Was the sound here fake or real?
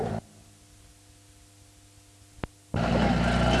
real